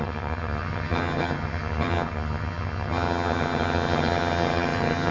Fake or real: fake